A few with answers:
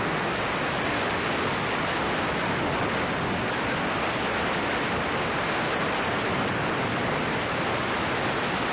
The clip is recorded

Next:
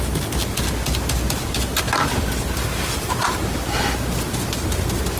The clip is recorded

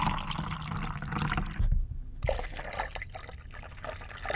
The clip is recorded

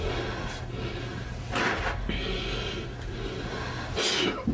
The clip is recorded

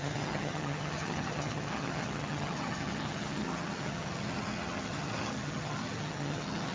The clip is remade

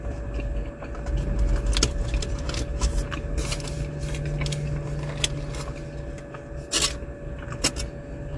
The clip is recorded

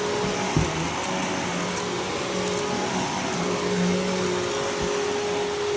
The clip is recorded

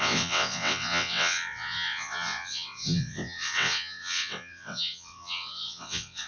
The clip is remade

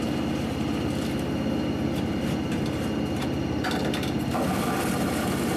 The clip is recorded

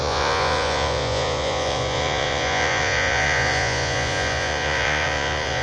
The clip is remade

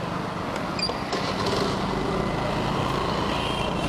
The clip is recorded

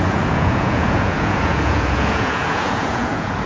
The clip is remade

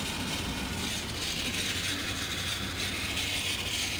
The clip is recorded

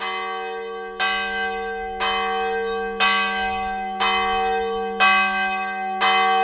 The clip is recorded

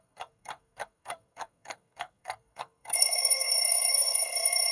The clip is remade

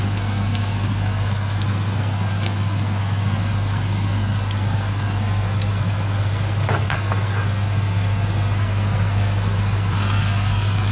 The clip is remade